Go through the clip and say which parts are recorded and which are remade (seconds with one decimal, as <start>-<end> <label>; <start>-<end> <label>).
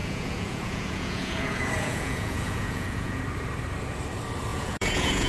0.0-3.2 remade; 3.2-4.5 recorded; 4.5-5.3 remade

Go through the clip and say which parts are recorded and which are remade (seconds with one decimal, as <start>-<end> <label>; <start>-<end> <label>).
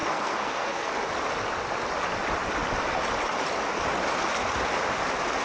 0.0-0.9 remade; 0.9-5.4 recorded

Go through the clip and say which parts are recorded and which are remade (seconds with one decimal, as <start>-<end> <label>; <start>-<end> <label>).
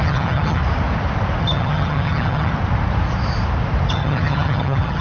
0.0-0.6 remade; 0.6-1.4 recorded; 1.4-2.5 remade; 2.5-3.9 recorded; 3.9-5.0 remade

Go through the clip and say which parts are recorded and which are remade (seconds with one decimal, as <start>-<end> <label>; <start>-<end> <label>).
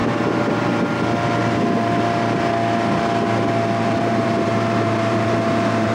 0.0-3.5 recorded; 3.5-5.9 remade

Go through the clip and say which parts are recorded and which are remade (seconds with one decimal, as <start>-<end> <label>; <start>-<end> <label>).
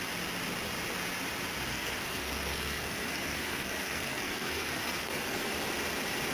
0.0-1.7 recorded; 1.7-5.5 remade; 5.5-6.3 recorded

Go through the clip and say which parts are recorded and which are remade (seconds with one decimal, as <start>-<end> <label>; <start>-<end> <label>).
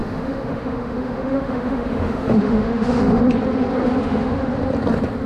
0.0-3.2 remade; 3.2-4.0 recorded; 4.0-4.6 remade; 4.6-5.3 recorded